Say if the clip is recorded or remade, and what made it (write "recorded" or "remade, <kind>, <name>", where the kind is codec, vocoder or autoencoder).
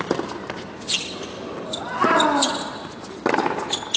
recorded